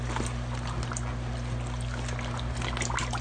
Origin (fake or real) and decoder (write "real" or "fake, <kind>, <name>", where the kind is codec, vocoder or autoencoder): real